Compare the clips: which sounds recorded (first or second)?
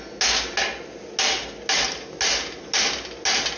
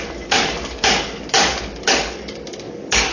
first